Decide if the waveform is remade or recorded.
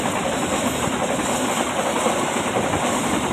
remade